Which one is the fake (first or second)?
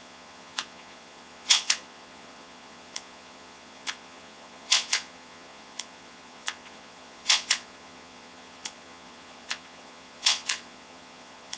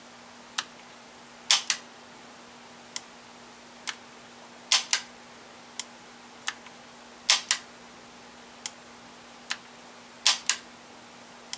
first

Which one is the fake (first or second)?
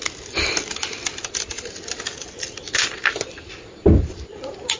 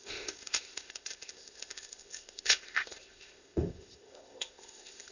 second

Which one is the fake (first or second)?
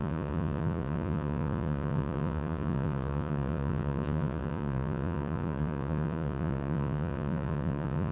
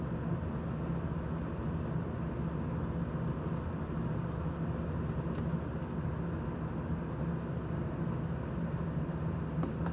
first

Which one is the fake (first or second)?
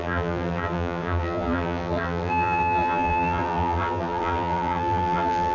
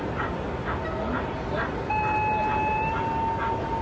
first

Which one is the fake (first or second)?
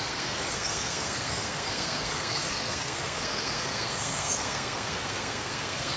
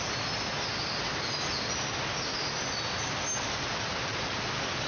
first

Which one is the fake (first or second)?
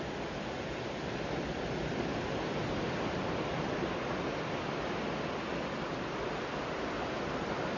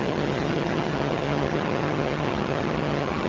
second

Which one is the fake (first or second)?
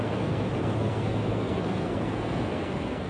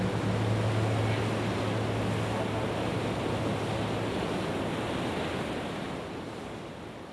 first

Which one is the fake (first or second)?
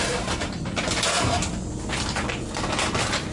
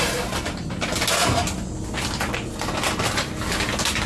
first